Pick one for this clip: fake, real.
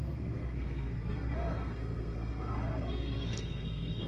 fake